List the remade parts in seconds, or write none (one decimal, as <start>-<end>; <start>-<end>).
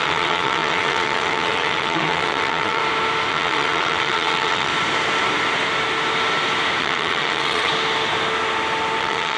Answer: 0.0-2.8; 3.3-4.7; 6.8-7.7; 9.0-9.4